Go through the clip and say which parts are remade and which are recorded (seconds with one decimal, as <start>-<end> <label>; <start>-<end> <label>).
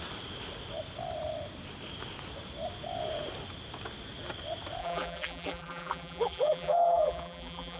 0.0-4.8 recorded; 4.8-7.8 remade